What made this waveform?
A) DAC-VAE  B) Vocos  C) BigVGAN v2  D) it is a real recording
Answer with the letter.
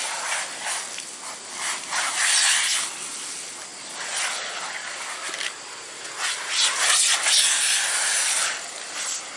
D